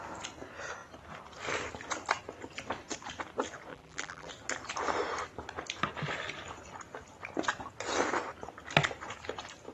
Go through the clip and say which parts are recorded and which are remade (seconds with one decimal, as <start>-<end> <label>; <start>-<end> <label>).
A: 0.0-3.7 recorded; 3.7-4.3 remade; 4.3-9.7 recorded